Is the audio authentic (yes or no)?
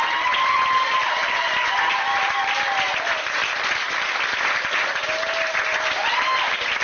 yes